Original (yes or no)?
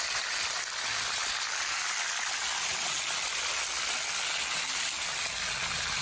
yes